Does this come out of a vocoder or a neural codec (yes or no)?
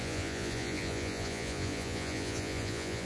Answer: yes